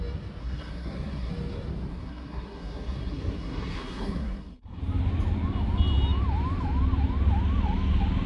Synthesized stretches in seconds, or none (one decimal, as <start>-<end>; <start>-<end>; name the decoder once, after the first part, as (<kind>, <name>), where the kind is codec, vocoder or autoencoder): 0.4-1.3 (codec, SNAC); 1.9-4.8